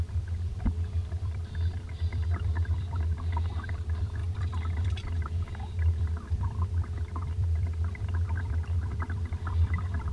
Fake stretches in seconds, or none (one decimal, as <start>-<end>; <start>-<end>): 0.0-10.1